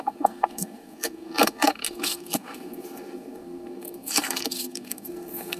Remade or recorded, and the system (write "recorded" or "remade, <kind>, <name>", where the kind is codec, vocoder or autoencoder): remade, codec, SNAC